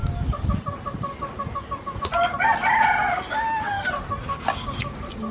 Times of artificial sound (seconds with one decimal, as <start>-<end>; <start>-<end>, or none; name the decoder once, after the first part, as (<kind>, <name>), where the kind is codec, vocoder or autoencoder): 3.1-3.9 (autoencoder, DAC-VAE)